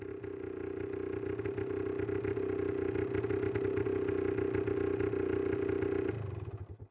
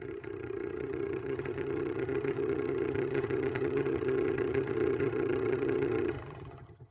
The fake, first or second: second